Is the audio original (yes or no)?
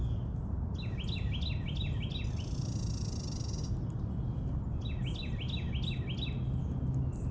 yes